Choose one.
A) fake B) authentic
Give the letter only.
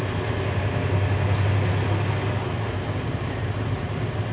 B